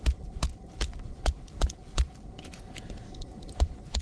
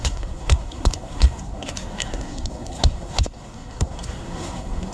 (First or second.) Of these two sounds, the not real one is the second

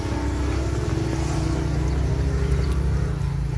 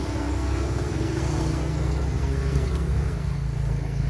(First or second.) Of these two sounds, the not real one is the second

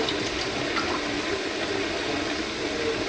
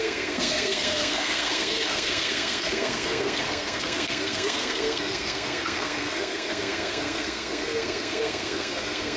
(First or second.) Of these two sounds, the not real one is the second